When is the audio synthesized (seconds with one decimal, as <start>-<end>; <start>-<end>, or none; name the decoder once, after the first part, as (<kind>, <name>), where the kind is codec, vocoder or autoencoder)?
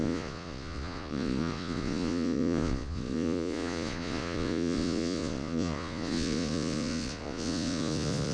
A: 0.0-8.3 (vocoder, Vocos)